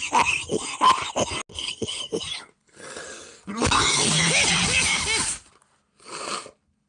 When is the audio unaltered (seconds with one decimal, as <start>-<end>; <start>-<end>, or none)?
0.0-1.5; 2.0-6.9